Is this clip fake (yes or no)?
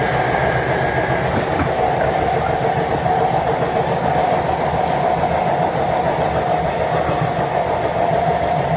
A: no